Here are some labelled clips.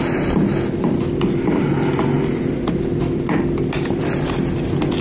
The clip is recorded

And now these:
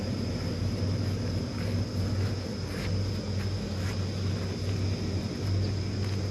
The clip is recorded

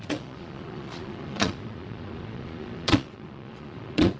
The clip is remade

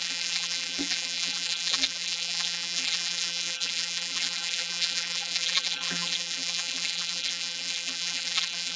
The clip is remade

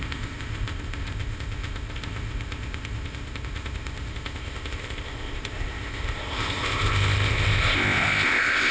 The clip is remade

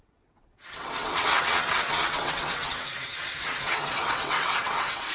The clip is remade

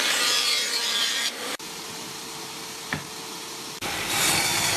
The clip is remade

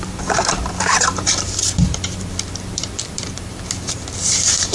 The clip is remade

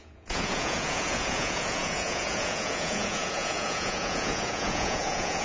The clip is remade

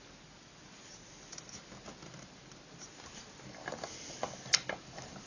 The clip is recorded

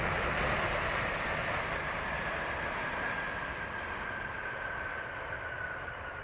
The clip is recorded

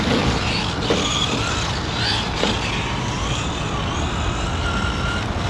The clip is recorded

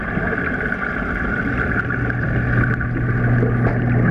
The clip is recorded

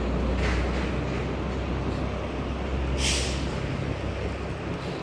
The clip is recorded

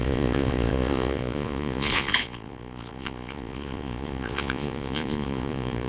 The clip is remade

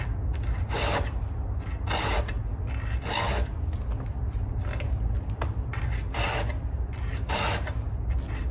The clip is recorded